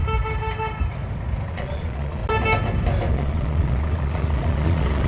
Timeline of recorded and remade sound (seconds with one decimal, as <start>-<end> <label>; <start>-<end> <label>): 0.0-1.5 recorded; 1.5-2.2 remade; 2.2-3.1 recorded; 3.1-5.1 remade